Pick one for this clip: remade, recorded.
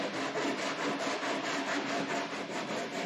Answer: recorded